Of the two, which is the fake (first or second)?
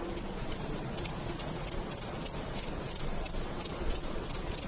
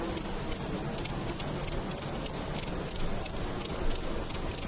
first